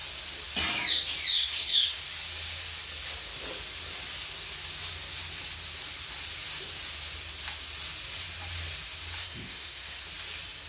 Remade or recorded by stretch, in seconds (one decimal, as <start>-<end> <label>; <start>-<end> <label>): 0.0-1.3 recorded; 1.3-2.0 remade; 2.0-9.2 recorded; 9.2-10.0 remade; 10.0-10.7 recorded